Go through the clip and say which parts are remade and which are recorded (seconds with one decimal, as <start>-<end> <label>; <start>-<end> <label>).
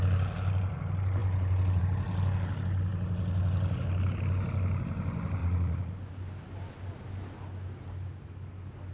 0.0-5.4 recorded; 5.4-5.9 remade; 5.9-8.9 recorded